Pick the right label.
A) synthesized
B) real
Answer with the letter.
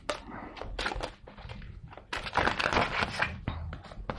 B